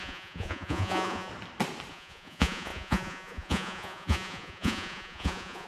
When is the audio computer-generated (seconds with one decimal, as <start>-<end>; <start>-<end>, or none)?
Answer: 0.0-1.3; 1.9-5.7